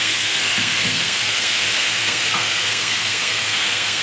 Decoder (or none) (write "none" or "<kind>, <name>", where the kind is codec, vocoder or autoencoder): codec, SNAC